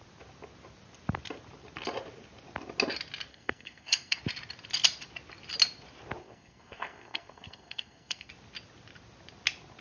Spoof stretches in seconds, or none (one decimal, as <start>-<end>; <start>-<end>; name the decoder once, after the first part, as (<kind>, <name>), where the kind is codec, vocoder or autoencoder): 3.3-4.2 (codec, SNAC); 6.2-8.3